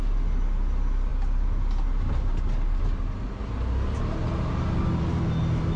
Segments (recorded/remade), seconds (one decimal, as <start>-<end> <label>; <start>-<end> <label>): 0.0-5.8 recorded

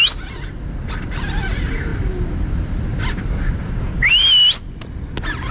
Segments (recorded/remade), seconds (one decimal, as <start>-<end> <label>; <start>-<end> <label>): 0.0-5.5 recorded

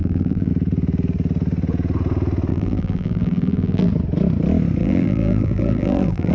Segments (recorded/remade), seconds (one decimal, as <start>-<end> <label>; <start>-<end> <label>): 0.0-0.5 remade; 0.5-2.5 recorded; 2.5-3.9 remade; 3.9-4.8 recorded; 4.8-6.3 remade

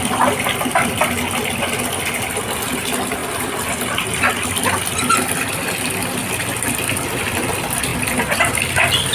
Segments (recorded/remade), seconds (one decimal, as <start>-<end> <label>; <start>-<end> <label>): 0.0-9.1 recorded